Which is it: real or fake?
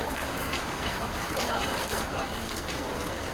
fake